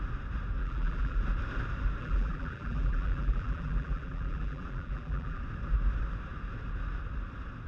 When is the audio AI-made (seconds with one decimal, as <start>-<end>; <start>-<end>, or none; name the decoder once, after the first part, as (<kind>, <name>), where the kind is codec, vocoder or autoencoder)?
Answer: 0.6-1.2 (vocoder, BigVGAN v2); 2.0-5.4